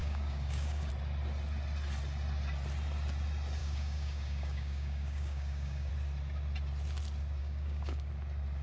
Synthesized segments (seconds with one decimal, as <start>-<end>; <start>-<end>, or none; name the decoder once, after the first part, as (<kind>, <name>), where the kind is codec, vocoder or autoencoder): 0.0-0.9 (codec, DAC); 3.6-5.9; 7.4-8.1